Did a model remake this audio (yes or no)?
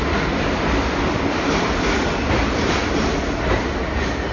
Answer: no